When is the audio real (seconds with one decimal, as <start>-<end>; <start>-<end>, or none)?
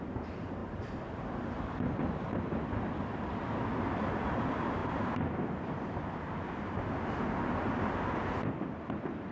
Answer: 4.8-8.9